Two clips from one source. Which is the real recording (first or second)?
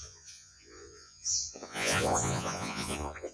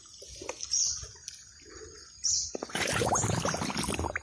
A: second